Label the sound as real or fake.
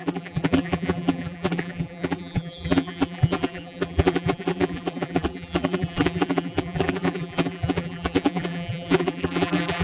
fake